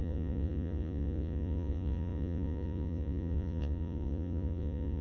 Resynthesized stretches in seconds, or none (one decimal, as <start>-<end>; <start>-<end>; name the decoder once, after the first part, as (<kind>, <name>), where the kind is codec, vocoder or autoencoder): 0.0-5.0 (vocoder, Vocos)